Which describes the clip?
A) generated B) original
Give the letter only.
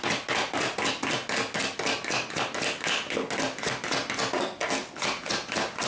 B